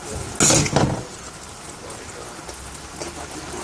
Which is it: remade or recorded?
recorded